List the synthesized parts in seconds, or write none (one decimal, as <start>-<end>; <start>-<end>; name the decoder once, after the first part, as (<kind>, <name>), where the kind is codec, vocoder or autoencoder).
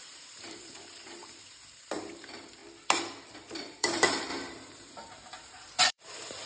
0.0-2.6 (vocoder, BigVGAN v2); 3.4-6.5